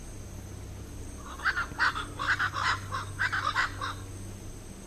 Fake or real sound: real